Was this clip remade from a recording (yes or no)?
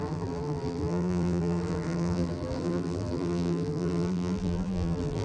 yes